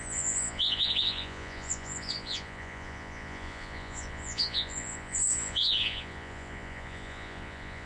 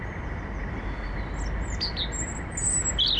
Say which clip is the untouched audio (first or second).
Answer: second